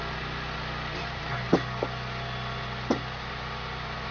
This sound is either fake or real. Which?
real